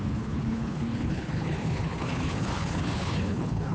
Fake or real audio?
fake